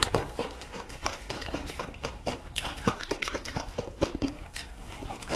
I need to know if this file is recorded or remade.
remade